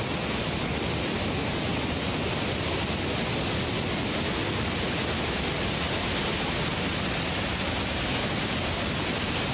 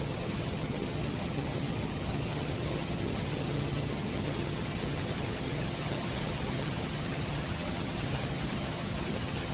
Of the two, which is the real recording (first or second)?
first